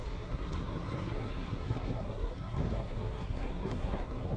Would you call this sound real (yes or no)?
no